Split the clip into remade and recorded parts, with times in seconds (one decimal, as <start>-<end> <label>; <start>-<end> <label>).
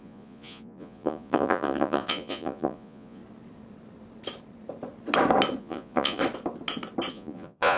0.0-3.2 remade; 3.2-5.6 recorded; 5.6-6.2 remade; 6.2-7.1 recorded; 7.1-7.8 remade